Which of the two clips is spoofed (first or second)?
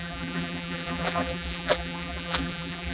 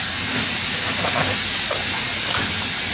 first